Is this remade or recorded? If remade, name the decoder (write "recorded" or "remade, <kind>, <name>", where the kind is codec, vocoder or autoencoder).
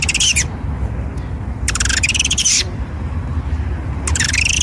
recorded